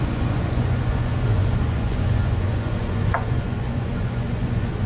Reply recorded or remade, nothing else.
remade